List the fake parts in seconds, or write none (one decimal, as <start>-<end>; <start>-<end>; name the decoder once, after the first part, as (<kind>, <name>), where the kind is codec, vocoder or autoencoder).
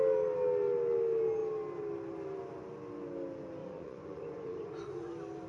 3.6-5.1 (vocoder, Vocos)